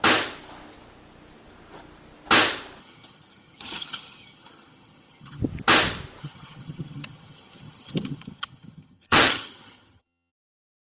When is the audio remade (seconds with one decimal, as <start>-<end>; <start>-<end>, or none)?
2.8-5.4; 6.2-10.3